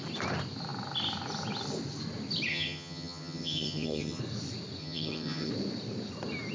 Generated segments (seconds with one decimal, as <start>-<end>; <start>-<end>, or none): 2.5-4.2; 4.8-5.5